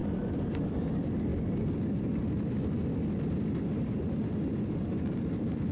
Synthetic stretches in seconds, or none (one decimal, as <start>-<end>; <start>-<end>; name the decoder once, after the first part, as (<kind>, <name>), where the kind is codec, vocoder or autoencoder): 0.0-1.3 (vocoder, BigVGAN v2); 4.7-5.7